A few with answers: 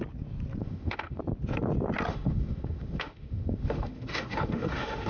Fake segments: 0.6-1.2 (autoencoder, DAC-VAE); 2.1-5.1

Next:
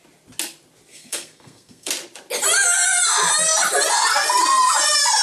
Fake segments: 0.9-1.9 (codec, SNAC)

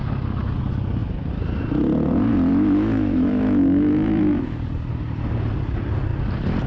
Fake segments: 2.5-4.4 (autoencoder, DAC-VAE)

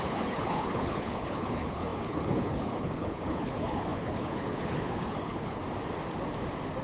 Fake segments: 0.0-5.6 (codec, HILCodec)